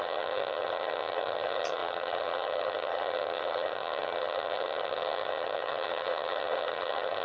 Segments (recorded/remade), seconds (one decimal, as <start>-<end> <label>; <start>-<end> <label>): 0.0-7.2 remade